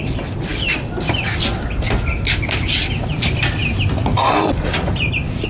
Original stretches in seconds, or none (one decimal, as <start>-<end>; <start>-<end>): 0.5-2.3